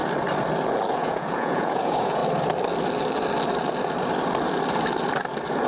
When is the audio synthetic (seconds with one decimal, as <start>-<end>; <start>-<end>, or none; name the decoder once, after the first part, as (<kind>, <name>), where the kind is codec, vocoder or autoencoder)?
0.9-2.2 (vocoder, Vocos)